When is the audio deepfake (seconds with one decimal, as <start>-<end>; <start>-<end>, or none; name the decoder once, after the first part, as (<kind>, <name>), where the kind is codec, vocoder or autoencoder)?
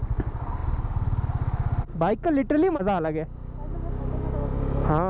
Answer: none